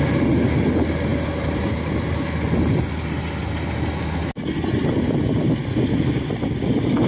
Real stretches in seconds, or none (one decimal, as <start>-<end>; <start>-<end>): 0.0-7.1